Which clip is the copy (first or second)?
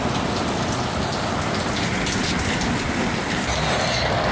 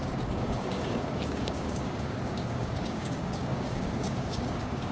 second